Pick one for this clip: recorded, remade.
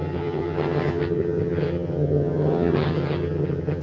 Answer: remade